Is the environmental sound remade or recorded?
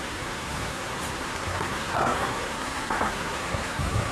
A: remade